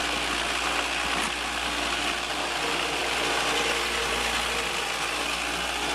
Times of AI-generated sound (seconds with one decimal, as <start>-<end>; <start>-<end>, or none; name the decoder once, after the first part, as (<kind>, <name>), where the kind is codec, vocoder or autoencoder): none